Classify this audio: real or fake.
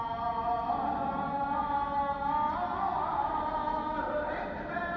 real